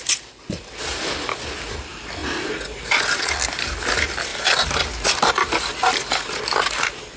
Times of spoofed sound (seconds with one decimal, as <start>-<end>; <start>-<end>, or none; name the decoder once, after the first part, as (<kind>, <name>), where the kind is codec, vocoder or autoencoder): none

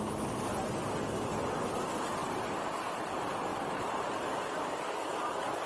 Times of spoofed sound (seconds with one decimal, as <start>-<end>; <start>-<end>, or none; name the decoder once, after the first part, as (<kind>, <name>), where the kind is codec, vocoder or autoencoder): none

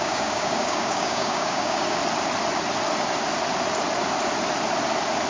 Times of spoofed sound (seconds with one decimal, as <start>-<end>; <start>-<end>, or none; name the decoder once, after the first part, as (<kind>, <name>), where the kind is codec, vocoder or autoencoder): 0.0-2.0 (codec, DAC)